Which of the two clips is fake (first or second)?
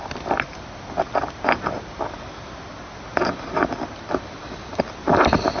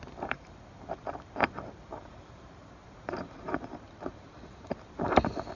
second